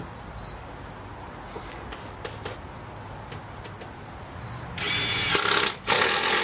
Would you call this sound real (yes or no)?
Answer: yes